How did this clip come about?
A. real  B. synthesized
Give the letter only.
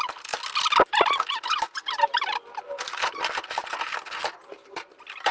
A